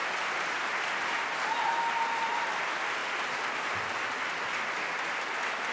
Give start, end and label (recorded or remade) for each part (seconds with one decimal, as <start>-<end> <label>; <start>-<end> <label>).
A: 0.0-5.7 recorded